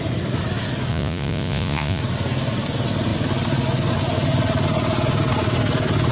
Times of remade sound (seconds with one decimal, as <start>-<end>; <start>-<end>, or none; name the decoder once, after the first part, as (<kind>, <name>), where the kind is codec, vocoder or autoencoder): 0.9-2.0 (vocoder, Vocos)